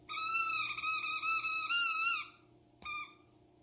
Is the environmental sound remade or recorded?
recorded